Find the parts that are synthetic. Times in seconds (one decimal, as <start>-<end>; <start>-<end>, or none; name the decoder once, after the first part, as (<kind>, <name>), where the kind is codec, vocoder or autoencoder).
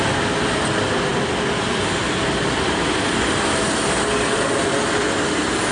none